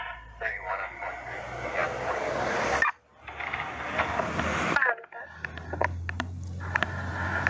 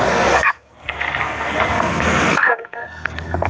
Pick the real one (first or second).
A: first